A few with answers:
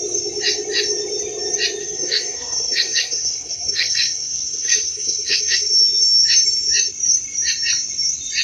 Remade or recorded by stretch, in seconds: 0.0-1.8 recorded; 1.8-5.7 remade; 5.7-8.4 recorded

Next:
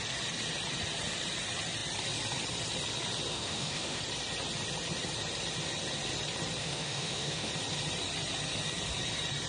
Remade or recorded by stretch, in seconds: 0.0-3.3 recorded; 3.3-4.0 remade; 4.0-6.6 recorded; 6.6-7.5 remade; 7.5-9.5 recorded

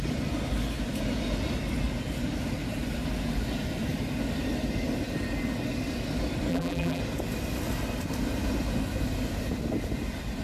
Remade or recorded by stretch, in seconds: 0.0-6.5 recorded; 6.5-7.0 remade; 7.0-10.4 recorded